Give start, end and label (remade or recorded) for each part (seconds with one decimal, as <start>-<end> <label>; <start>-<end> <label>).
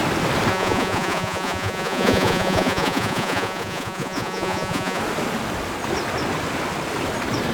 0.0-0.5 recorded; 0.5-5.0 remade; 5.0-7.5 recorded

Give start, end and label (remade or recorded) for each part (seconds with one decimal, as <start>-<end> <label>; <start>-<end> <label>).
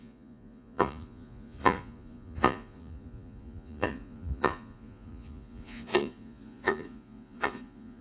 0.0-8.0 remade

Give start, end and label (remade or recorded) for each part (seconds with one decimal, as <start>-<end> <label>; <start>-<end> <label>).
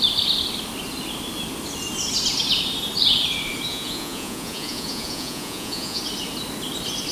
0.0-3.7 recorded; 3.7-6.0 remade; 6.0-7.1 recorded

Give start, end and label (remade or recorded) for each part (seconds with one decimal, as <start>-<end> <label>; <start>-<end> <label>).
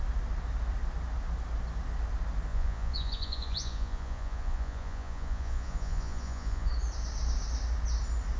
0.0-2.5 recorded; 2.5-6.7 remade; 6.7-8.4 recorded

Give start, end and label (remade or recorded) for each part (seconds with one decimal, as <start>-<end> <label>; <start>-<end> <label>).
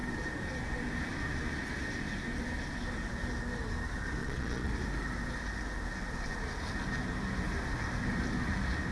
0.0-4.2 recorded; 4.2-4.7 remade; 4.7-8.9 recorded